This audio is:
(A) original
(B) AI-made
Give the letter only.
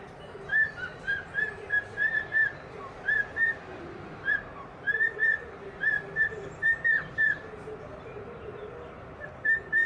A